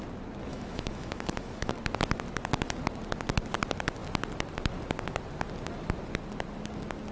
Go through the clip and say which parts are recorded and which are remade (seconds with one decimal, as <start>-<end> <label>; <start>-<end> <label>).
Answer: 0.0-0.5 recorded; 0.5-1.7 remade; 1.7-7.1 recorded